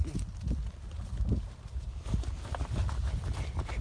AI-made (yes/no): no